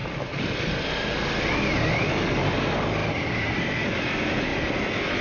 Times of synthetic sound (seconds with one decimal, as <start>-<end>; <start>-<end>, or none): none